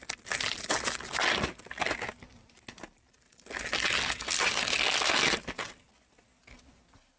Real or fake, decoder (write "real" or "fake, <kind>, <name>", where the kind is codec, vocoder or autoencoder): real